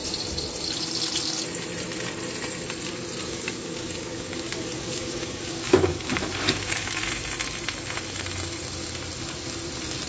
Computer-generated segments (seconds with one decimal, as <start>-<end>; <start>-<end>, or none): 3.2-7.0